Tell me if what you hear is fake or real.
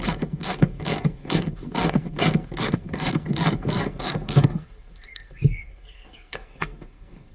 fake